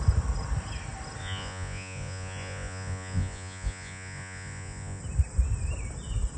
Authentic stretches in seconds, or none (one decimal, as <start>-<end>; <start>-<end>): 0.0-1.2; 5.0-6.4